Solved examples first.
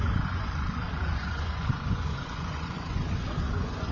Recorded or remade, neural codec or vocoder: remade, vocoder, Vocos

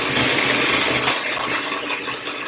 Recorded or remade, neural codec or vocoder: recorded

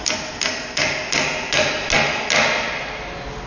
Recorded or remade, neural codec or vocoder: recorded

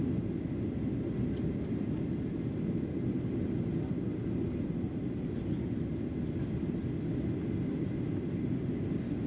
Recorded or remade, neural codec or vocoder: recorded